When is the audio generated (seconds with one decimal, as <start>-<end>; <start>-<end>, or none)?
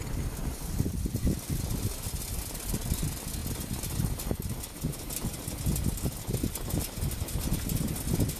none